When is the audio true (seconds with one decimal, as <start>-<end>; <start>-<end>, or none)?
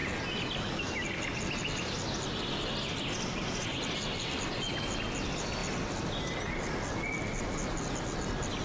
0.0-8.6